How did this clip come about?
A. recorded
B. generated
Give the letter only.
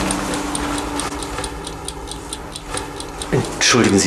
A